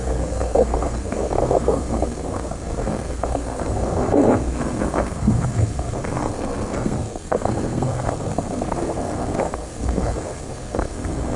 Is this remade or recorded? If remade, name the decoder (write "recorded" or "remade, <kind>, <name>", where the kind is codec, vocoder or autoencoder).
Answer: remade, codec, SNAC